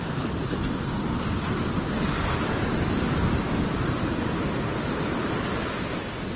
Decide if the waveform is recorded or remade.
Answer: remade